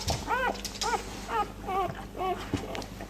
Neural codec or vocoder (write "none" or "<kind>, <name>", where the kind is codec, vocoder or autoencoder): none